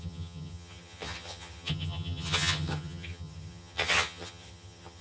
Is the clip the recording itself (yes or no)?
no